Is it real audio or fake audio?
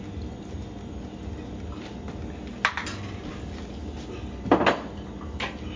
real